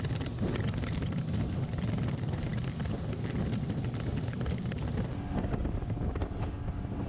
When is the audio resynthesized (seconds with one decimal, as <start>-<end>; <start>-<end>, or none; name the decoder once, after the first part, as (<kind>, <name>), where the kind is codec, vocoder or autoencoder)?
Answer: none

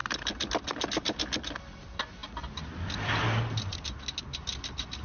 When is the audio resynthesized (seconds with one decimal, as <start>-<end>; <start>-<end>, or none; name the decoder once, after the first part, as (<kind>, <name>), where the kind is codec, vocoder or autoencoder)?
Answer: none